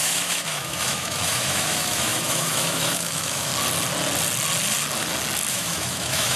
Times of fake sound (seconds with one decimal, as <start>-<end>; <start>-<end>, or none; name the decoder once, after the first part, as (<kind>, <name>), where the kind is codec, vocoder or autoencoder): 0.0-3.5 (autoencoder, DAC-VAE); 5.5-6.4

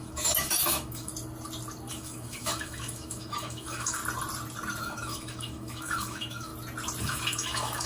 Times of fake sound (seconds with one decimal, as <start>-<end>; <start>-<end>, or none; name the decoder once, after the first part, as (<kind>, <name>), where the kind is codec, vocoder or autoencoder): 0.0-1.1 (autoencoder, DAC-VAE); 1.9-4.0; 4.8-6.5; 7.0-7.9

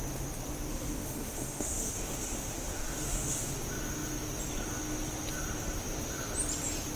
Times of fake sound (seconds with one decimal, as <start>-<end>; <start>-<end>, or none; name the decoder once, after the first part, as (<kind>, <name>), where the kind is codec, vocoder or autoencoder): 0.7-3.5 (autoencoder, DAC-VAE)

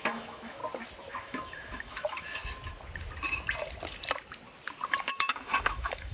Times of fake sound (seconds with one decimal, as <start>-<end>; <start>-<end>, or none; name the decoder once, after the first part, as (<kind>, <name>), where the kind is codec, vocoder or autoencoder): 0.0-0.6 (autoencoder, DAC-VAE); 1.1-2.4; 4.9-6.1

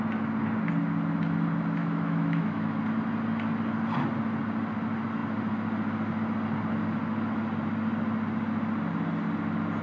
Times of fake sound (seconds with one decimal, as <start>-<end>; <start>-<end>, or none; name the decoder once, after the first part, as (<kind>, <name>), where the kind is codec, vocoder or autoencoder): 1.8-2.8 (autoencoder, DAC-VAE)